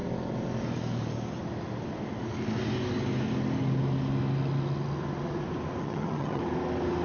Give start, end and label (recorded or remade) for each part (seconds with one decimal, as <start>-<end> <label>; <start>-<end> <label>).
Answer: 0.0-5.8 recorded; 5.8-6.4 remade; 6.4-7.0 recorded